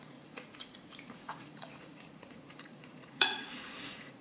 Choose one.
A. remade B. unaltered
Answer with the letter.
A